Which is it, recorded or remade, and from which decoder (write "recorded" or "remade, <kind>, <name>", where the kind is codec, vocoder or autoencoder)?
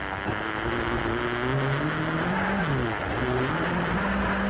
recorded